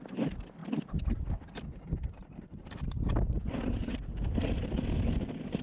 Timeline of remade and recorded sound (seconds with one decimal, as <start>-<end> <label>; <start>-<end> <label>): 0.0-5.6 recorded

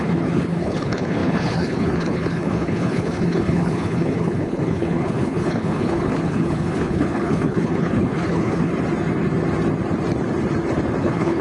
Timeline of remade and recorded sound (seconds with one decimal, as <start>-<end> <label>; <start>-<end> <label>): 0.0-8.7 remade; 8.7-11.0 recorded; 11.0-11.4 remade

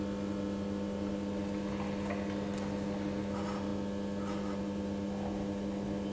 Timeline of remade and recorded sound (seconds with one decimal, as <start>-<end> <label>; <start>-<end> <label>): 0.0-6.1 recorded

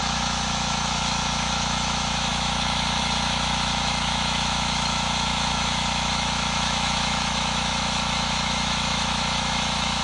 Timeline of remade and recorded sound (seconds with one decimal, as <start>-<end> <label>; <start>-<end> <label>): 0.0-10.0 remade

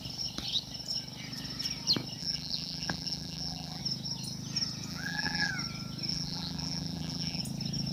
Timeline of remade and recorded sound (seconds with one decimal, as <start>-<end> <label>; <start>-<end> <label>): 0.0-2.2 recorded; 2.2-3.8 remade; 3.8-4.9 recorded; 4.9-5.5 remade; 5.5-6.1 recorded; 6.1-7.4 remade; 7.4-7.9 recorded

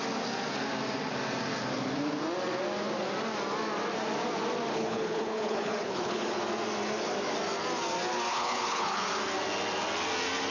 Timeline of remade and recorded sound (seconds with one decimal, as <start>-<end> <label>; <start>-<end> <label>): 0.0-4.7 recorded; 4.7-6.4 remade; 6.4-8.3 recorded; 8.3-9.1 remade; 9.1-10.5 recorded

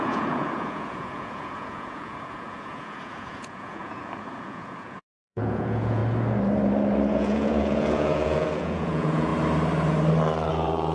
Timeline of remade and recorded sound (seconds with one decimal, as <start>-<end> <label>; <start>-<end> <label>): 0.0-6.0 remade; 6.0-7.1 recorded; 7.1-9.3 remade; 9.3-10.5 recorded; 10.5-10.9 remade